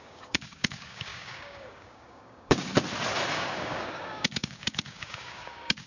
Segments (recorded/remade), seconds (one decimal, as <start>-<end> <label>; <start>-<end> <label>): 0.0-2.7 remade; 2.7-3.3 recorded; 3.3-5.9 remade